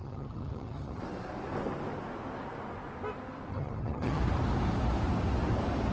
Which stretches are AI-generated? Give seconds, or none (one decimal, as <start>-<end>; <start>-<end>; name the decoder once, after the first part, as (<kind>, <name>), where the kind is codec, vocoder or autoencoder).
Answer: 0.0-1.0 (vocoder, HiFi-GAN); 3.5-4.2